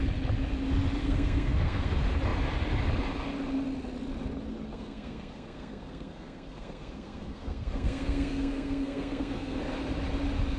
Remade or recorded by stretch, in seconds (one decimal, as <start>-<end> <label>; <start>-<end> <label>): 0.0-1.0 recorded; 1.0-1.9 remade; 1.9-4.7 recorded; 4.7-9.6 remade; 9.6-10.6 recorded